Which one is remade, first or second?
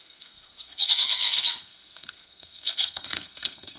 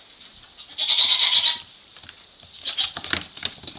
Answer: first